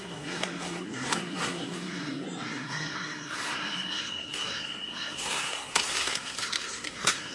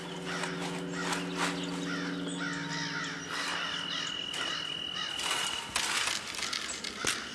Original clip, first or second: second